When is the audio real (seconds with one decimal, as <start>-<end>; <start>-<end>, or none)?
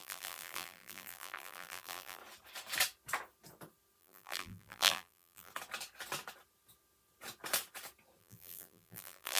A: 2.2-4.0; 5.5-8.2